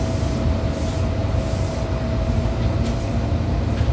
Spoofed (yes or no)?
no